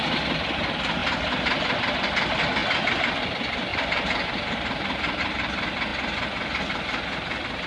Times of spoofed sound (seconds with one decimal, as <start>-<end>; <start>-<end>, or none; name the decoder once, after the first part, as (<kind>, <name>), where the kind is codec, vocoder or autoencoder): 3.7-5.2 (vocoder, BigVGAN v2)